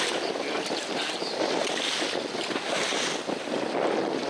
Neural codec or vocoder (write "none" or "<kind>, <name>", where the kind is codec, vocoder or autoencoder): none